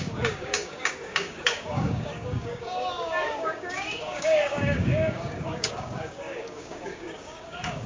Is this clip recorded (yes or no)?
no